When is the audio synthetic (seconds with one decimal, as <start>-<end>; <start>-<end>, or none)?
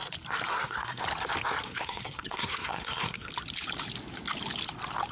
0.5-1.0; 1.6-3.3